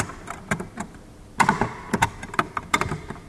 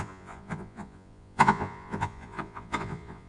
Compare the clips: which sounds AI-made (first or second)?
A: second